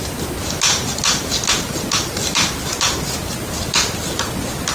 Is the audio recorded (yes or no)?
yes